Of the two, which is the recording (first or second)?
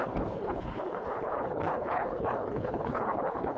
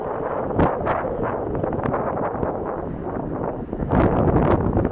second